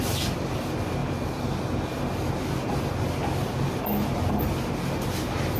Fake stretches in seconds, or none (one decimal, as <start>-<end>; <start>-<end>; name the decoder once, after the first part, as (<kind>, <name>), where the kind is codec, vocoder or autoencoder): none